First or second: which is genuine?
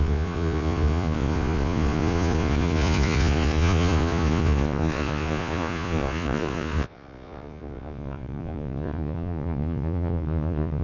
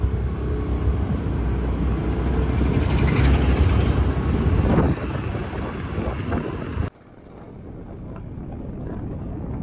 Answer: second